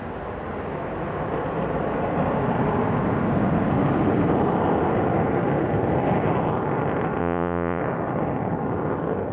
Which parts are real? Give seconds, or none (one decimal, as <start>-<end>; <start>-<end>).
0.0-7.2; 7.8-9.3

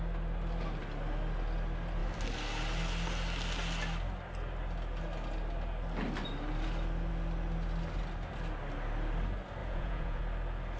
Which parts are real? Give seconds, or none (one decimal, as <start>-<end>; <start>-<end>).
0.0-9.6; 10.2-10.8

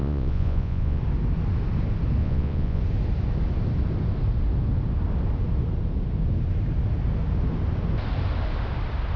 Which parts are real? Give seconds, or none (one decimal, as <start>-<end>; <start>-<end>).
1.0-2.2; 2.8-9.2